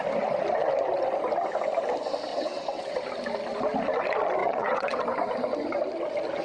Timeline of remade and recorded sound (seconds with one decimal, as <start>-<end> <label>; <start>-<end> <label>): 0.0-2.3 recorded; 2.3-3.0 remade; 3.0-4.4 recorded; 4.4-5.0 remade; 5.0-6.4 recorded